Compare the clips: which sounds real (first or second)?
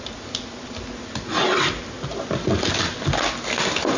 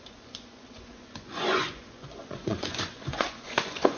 first